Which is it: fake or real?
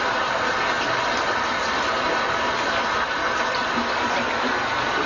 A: real